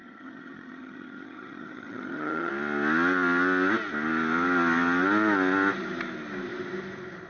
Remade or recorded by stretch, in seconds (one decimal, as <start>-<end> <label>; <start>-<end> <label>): 0.0-2.5 remade; 2.5-7.3 recorded